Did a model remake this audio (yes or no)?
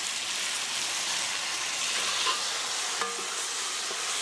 no